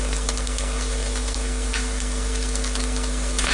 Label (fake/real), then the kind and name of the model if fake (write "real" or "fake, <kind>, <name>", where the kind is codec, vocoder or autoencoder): fake, codec, SNAC